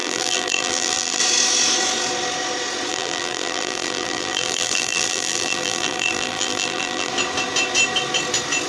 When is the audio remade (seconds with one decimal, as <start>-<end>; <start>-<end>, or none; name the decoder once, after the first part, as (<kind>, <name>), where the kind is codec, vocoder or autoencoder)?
0.0-1.2 (vocoder, BigVGAN v2); 2.9-7.1